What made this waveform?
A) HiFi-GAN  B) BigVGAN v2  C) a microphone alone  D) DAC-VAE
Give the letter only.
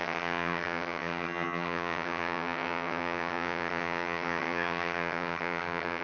A